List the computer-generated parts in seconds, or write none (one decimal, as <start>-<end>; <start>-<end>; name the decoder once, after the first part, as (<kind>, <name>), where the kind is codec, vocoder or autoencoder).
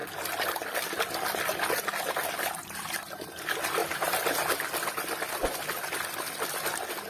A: none